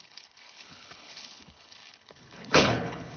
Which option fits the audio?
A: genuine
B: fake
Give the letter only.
B